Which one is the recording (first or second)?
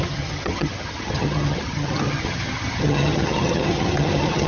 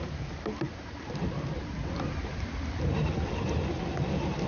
second